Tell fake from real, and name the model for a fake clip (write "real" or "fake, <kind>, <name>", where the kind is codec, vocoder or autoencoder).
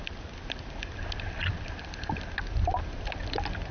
real